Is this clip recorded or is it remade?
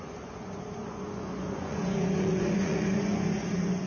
remade